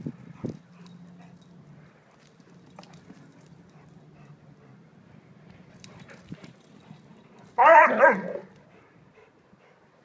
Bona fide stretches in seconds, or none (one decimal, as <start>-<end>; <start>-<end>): 0.0-10.0